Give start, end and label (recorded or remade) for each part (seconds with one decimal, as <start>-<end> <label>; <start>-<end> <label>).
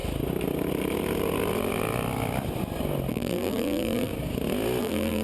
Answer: 0.0-3.1 recorded; 3.1-4.1 remade; 4.1-4.8 recorded; 4.8-5.2 remade